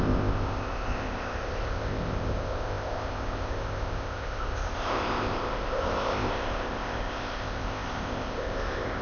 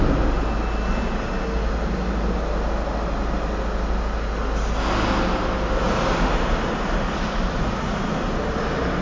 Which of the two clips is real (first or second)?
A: second